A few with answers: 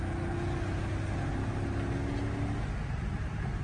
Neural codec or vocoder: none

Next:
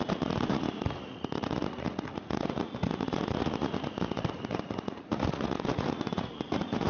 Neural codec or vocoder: vocoder, Vocos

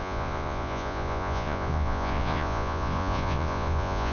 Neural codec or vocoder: vocoder, Vocos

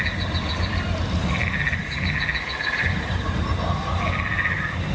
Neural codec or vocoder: none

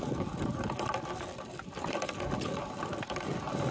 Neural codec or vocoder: none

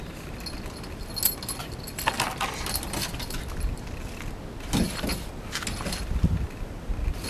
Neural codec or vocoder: none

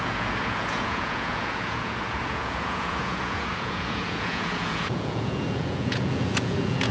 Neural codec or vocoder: vocoder, Vocos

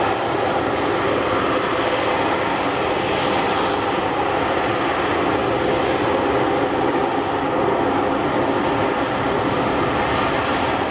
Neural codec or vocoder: none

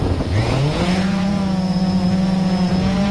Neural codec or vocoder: vocoder, Vocos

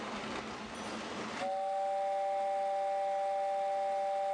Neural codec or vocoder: none